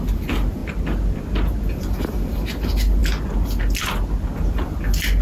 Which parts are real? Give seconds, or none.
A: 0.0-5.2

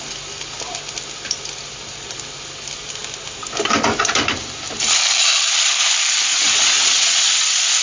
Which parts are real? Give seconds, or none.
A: 0.0-6.3; 7.3-7.8